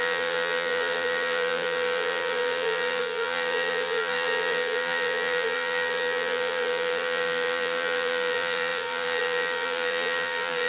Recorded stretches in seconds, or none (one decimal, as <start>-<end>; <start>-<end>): none